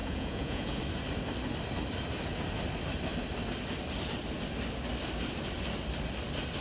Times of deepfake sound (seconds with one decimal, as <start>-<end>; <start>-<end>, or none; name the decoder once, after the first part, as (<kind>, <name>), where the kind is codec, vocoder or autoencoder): 0.0-0.8 (vocoder, Vocos)